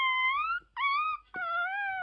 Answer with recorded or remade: recorded